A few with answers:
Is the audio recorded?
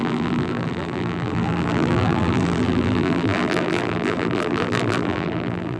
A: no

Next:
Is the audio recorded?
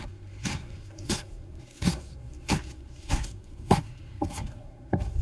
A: no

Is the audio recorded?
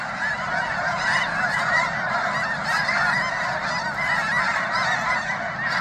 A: yes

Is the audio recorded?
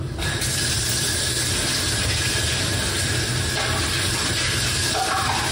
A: yes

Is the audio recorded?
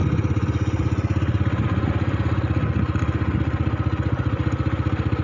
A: yes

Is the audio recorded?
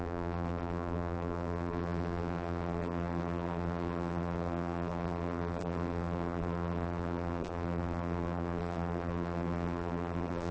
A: no